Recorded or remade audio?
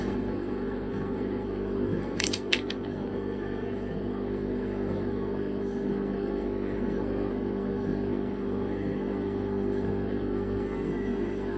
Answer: remade